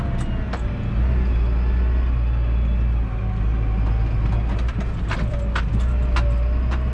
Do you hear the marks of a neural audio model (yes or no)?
no